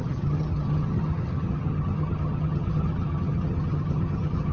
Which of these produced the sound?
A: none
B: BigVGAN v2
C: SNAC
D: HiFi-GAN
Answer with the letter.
D